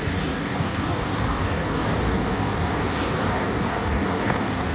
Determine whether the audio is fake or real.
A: fake